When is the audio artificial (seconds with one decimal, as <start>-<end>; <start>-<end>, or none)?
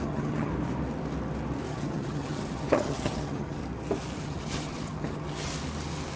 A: 0.0-0.5; 1.7-3.6; 4.2-5.5